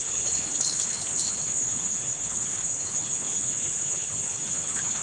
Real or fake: fake